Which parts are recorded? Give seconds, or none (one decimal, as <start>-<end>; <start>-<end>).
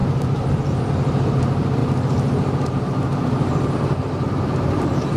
0.9-1.8